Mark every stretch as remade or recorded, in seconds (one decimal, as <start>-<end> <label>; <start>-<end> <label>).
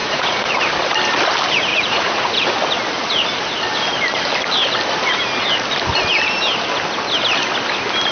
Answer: 0.0-0.5 remade; 0.5-1.7 recorded; 1.7-2.4 remade; 2.4-8.1 recorded